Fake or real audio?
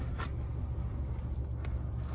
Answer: real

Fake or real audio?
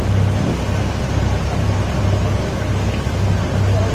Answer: real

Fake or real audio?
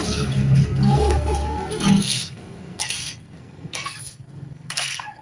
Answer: fake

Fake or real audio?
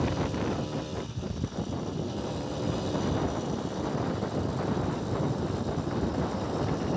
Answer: real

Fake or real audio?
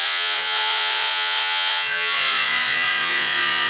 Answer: fake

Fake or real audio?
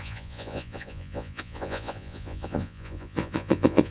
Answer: fake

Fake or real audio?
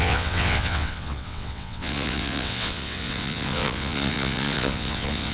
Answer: fake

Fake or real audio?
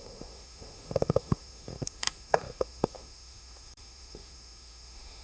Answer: fake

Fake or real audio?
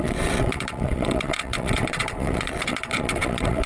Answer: fake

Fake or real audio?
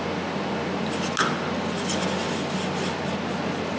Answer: real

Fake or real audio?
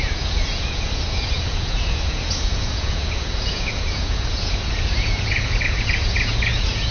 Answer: fake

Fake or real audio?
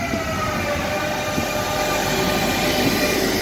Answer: real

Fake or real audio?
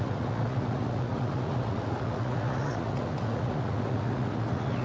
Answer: fake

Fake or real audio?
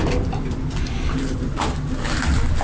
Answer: real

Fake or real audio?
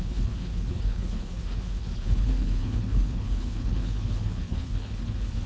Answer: fake